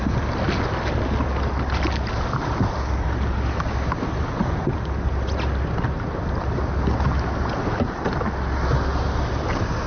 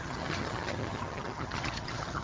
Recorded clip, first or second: first